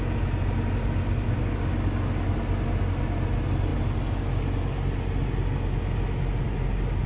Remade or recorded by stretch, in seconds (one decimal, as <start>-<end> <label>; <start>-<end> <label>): 0.0-7.1 recorded